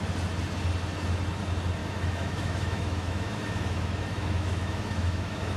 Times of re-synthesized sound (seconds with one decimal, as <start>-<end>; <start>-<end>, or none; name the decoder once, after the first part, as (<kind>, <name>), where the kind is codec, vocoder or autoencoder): 1.8-5.6 (autoencoder, DAC-VAE)